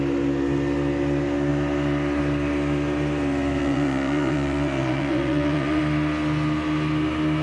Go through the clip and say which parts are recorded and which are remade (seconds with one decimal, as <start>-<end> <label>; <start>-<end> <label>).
0.0-3.6 recorded; 3.6-5.8 remade; 5.8-7.4 recorded